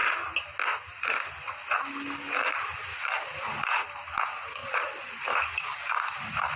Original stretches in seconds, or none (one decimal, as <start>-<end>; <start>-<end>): 0.0-4.6; 5.1-6.6